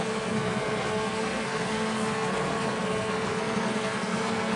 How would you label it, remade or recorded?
remade